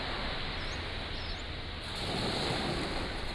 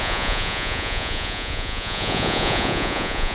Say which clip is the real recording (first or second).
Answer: first